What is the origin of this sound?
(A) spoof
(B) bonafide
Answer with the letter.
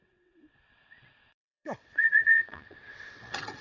A